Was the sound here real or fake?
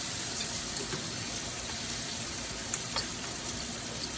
fake